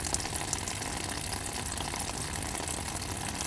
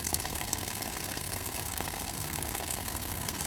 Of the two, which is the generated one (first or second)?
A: second